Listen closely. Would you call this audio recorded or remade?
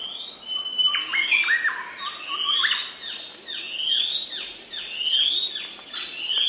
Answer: recorded